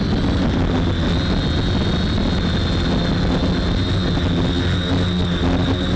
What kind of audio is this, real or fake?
real